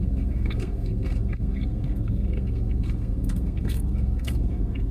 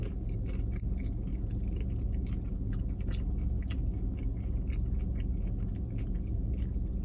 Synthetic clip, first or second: first